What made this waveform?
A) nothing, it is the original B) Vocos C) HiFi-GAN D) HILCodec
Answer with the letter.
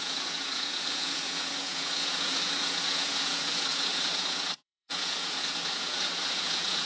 B